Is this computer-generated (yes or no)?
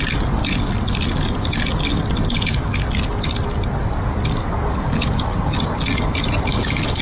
no